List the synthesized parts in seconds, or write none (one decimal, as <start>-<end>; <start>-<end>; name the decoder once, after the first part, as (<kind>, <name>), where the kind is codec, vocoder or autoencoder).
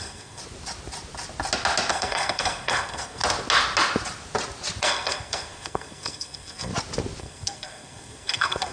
0.0-0.4 (codec, SNAC); 1.9-3.2; 4.8-6.7; 7.2-8.7